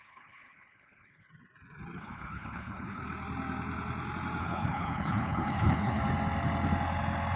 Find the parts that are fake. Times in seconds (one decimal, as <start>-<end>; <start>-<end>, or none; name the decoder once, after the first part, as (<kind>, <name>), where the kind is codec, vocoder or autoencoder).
0.0-1.3 (codec, HILCodec); 2.0-3.0; 4.4-6.0